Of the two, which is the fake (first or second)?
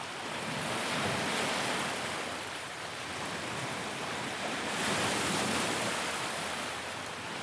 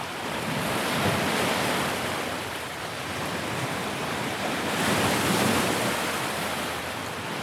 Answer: second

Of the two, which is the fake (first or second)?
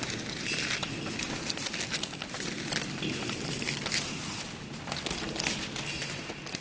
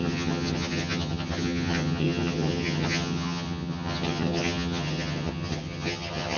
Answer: second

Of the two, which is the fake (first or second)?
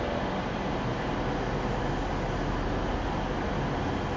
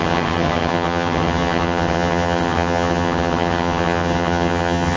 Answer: second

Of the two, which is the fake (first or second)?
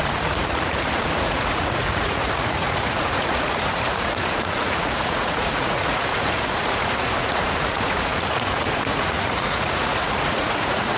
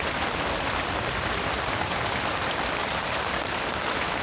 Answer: first